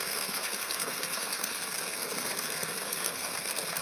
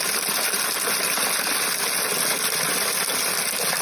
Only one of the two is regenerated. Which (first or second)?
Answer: first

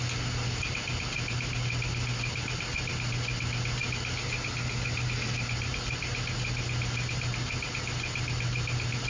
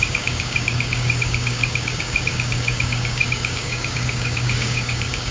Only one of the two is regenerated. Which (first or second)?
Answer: second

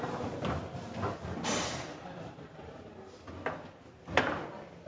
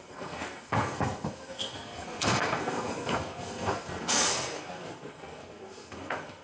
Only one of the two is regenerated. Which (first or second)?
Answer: second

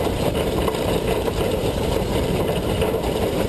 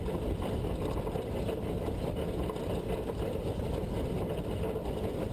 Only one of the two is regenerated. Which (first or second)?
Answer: first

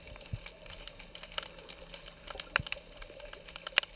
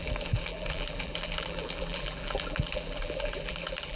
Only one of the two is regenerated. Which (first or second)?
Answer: second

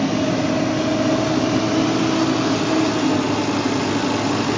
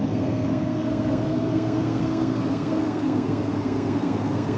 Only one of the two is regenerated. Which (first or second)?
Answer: second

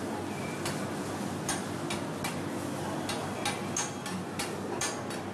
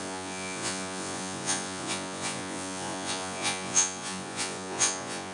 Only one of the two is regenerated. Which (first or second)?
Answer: second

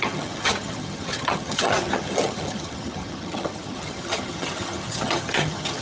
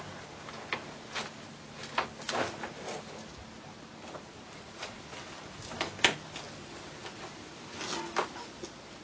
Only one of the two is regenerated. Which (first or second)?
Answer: first